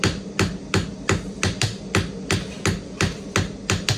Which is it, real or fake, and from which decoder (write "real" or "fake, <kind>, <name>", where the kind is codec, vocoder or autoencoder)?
real